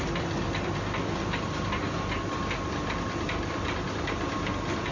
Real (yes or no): yes